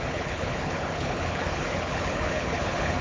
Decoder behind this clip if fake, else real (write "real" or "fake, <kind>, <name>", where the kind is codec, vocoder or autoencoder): fake, codec, HILCodec